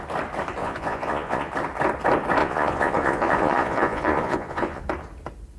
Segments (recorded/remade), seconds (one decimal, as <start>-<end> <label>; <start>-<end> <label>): 0.0-0.6 recorded; 0.6-1.5 remade; 1.5-2.4 recorded; 2.4-4.8 remade; 4.8-5.6 recorded